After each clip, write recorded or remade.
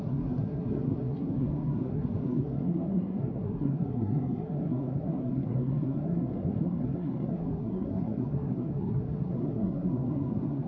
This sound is remade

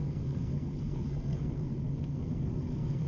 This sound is remade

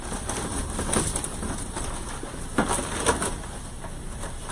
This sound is recorded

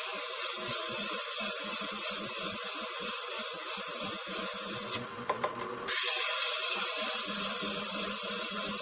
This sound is recorded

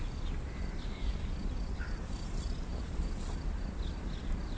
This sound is recorded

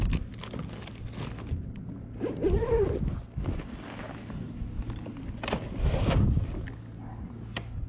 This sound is recorded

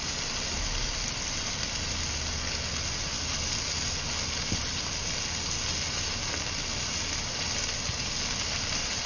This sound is recorded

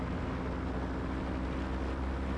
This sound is recorded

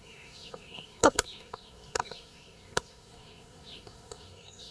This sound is remade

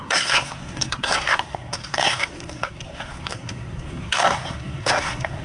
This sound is remade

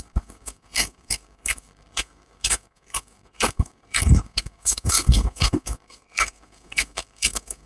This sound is remade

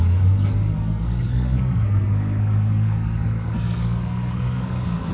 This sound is remade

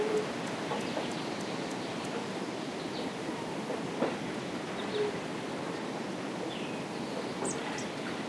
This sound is recorded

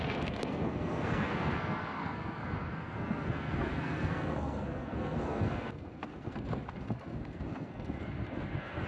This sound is remade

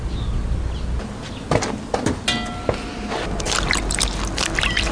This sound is recorded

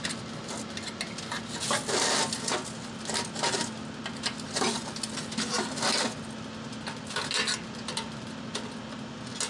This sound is recorded